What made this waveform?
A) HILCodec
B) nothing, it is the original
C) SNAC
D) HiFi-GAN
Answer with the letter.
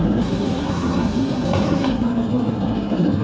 C